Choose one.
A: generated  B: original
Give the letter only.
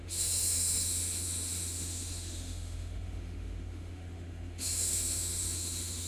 A